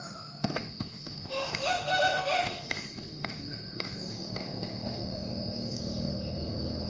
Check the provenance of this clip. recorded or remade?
remade